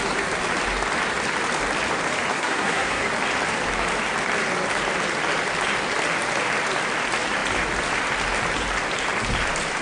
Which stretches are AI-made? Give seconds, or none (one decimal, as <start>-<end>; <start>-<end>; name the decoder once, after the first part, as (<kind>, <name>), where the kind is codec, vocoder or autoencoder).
2.3-3.1 (codec, SNAC)